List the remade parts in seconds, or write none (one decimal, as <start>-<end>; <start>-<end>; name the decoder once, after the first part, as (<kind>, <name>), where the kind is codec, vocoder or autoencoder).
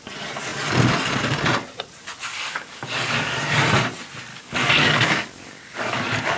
2.3-3.4 (codec, DAC); 4.3-6.4